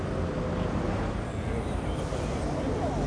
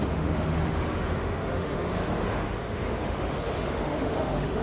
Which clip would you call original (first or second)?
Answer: first